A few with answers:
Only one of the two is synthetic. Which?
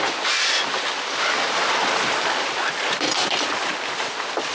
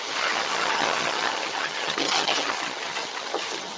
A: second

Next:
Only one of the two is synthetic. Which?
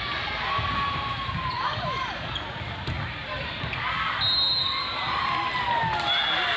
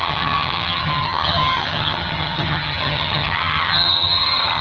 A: second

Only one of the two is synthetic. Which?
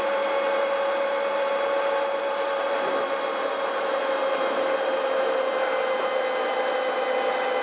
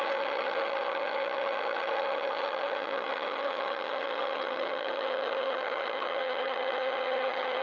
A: second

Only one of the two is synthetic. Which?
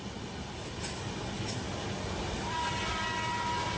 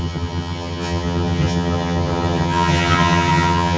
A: second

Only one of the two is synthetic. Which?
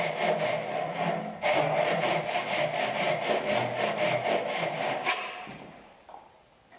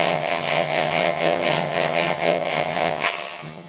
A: second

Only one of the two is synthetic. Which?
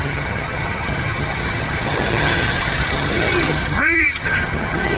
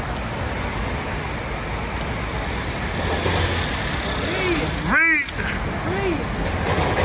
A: first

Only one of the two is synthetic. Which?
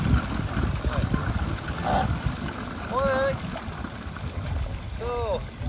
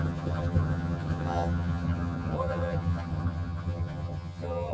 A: second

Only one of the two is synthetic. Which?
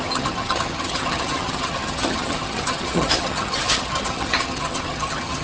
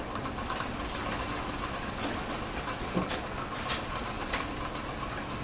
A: first